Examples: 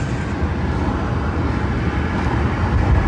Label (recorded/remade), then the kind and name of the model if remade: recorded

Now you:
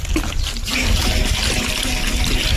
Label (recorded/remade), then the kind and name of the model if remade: recorded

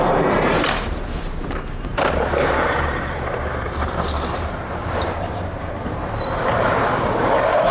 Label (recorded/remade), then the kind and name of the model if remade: remade, vocoder, BigVGAN v2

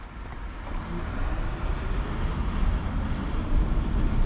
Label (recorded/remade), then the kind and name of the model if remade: remade, vocoder, BigVGAN v2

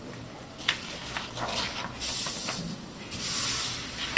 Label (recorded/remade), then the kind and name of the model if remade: recorded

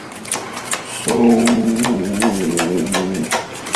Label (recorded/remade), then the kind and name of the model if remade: recorded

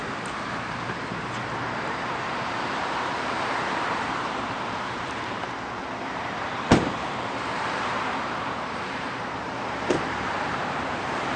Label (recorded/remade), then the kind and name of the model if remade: remade, vocoder, BigVGAN v2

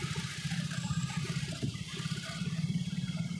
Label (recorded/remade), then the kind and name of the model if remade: remade, vocoder, BigVGAN v2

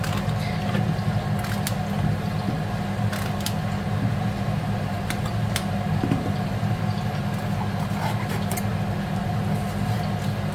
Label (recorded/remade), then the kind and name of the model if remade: recorded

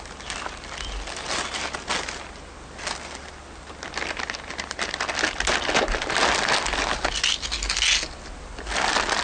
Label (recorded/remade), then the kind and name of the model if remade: recorded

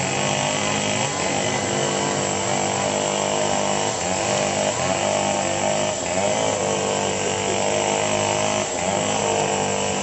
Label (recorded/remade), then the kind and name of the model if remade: recorded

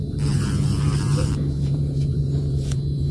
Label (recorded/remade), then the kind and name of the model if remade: remade, vocoder, BigVGAN v2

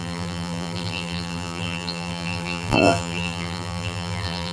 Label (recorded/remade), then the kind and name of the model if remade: remade, vocoder, BigVGAN v2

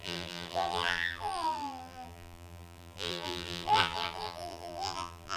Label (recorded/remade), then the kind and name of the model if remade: remade, vocoder, BigVGAN v2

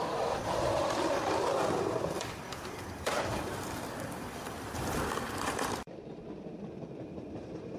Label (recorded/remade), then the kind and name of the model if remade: remade, vocoder, BigVGAN v2